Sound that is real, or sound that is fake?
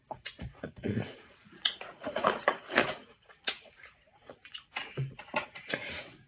fake